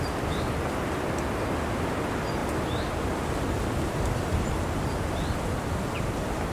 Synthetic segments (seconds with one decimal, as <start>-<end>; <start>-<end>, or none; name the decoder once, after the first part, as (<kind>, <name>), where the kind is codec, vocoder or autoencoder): none